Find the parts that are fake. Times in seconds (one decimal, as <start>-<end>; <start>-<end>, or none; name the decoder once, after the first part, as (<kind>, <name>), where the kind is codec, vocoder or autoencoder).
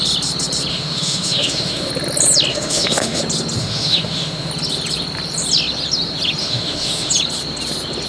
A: 0.7-1.9 (autoencoder, DAC-VAE); 2.5-3.2; 3.6-4.5; 6.4-7.1